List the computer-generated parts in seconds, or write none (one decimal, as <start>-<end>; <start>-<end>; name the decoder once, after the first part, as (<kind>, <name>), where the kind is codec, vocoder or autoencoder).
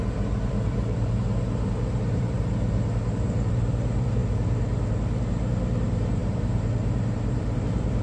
0.0-4.2 (vocoder, BigVGAN v2); 4.9-8.0